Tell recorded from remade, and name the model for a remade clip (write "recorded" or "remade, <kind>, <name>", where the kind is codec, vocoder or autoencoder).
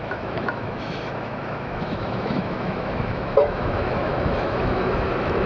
remade, autoencoder, DAC-VAE